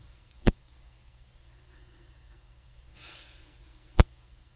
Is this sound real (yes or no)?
no